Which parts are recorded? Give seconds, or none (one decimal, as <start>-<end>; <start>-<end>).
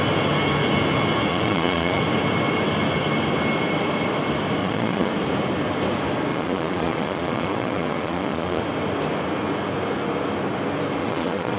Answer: 0.0-1.3; 2.0-4.6; 5.1-6.3; 8.6-11.0